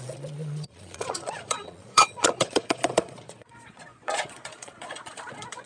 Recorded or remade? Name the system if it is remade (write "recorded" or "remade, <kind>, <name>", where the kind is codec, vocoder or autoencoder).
remade, vocoder, Vocos